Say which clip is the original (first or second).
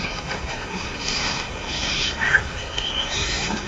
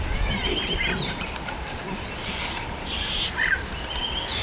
second